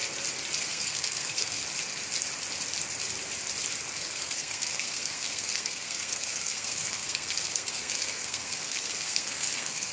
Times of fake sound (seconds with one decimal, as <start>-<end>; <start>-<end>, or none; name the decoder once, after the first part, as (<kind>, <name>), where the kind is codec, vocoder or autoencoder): 0.6-1.6 (codec, SNAC); 3.9-9.9